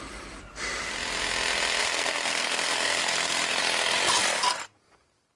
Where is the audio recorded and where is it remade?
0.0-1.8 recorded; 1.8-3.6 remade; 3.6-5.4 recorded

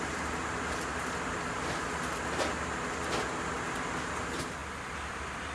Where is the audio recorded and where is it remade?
0.0-5.5 recorded

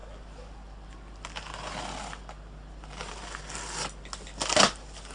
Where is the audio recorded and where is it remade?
0.0-5.1 recorded

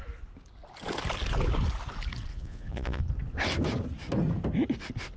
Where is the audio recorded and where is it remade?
0.0-2.3 recorded; 2.3-3.0 remade; 3.0-5.2 recorded

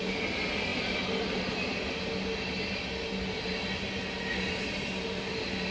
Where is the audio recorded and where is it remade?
0.0-5.7 recorded

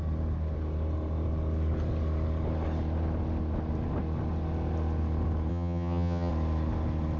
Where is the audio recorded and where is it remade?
0.0-5.5 recorded; 5.5-6.3 remade; 6.3-7.2 recorded